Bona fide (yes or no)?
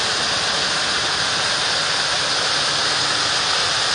yes